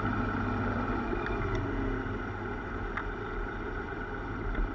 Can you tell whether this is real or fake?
real